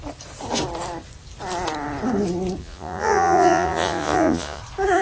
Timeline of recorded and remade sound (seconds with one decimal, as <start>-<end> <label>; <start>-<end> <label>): 0.0-2.6 recorded; 2.6-4.6 remade; 4.6-5.0 recorded